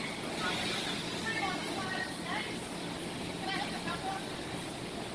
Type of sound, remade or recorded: recorded